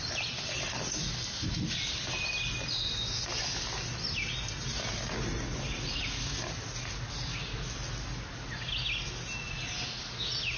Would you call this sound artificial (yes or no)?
no